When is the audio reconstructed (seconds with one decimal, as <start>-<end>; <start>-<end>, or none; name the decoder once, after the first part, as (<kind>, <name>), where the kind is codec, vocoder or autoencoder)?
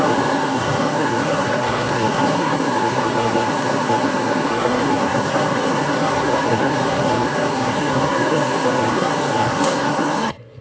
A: 0.0-10.6 (codec, SNAC)